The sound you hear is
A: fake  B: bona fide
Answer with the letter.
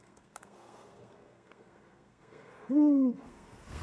A